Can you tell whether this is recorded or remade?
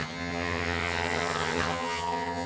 remade